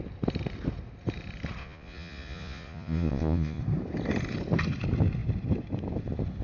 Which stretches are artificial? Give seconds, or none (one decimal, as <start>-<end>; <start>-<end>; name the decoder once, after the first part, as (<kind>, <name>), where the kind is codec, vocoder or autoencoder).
1.6-3.6 (vocoder, Vocos)